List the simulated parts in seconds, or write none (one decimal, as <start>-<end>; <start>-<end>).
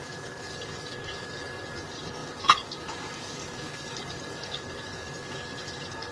0.0-6.1